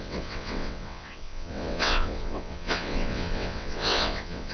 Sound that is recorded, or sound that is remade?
remade